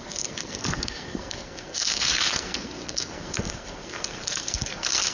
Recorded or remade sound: remade